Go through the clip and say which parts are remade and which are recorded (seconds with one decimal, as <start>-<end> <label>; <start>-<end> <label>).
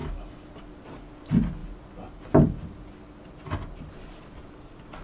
0.0-0.5 remade; 0.5-5.0 recorded